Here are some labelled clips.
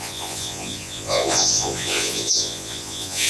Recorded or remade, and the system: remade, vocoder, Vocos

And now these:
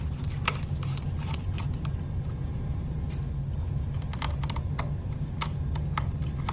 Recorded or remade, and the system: recorded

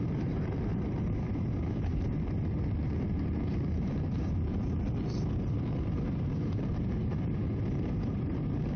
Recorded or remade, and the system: remade, vocoder, BigVGAN v2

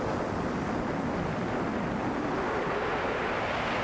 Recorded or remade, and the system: recorded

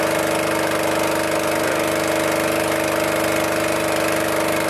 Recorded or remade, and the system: recorded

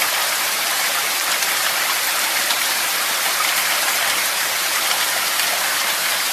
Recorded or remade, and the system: remade, vocoder, BigVGAN v2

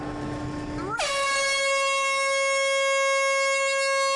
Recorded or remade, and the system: recorded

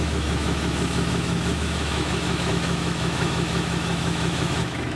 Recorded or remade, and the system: remade, autoencoder, DAC-VAE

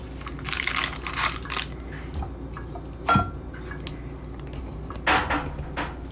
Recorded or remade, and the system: recorded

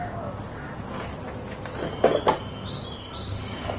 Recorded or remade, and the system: recorded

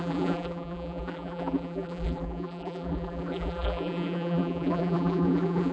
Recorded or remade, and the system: remade, vocoder, BigVGAN v2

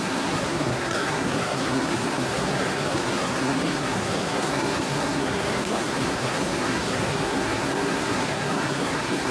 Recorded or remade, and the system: remade, codec, SNAC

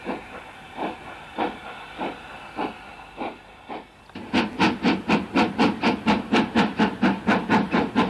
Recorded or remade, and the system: recorded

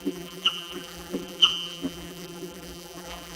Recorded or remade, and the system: remade, vocoder, BigVGAN v2